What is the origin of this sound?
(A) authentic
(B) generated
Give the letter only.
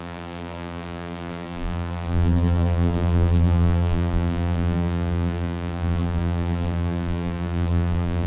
B